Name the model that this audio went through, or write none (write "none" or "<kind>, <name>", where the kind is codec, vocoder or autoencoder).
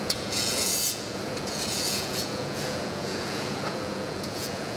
vocoder, Vocos